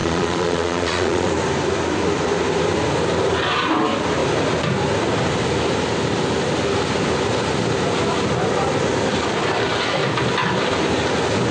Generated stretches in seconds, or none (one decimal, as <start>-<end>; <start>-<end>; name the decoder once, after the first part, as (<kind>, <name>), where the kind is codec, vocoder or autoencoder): 0.0-1.3 (vocoder, Vocos)